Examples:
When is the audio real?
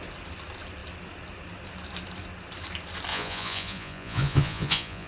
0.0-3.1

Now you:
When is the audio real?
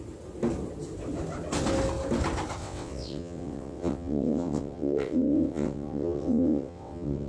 0.0-2.6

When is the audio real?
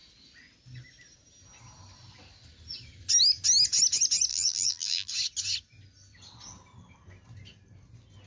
0.0-4.3; 5.1-8.3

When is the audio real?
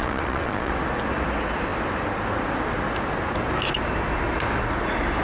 0.7-5.2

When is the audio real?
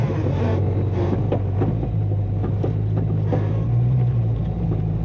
0.5-3.5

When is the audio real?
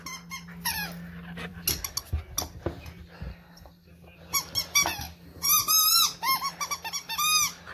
0.0-3.3; 3.9-7.7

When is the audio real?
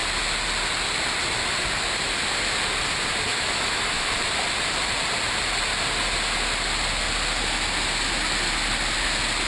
0.0-3.3; 4.1-9.5